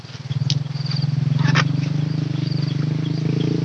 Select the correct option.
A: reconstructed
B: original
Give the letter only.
B